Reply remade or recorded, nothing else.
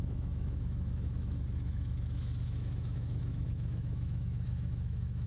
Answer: remade